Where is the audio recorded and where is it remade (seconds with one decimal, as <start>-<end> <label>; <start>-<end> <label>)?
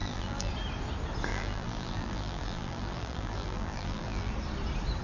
0.0-0.5 remade; 0.5-1.3 recorded; 1.3-4.3 remade; 4.3-5.0 recorded